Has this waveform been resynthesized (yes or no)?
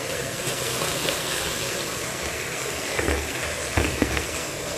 yes